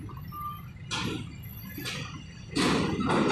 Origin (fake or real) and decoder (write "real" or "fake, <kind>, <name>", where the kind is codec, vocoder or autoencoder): real